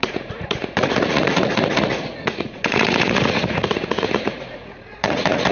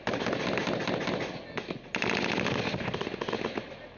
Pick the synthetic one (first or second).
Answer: first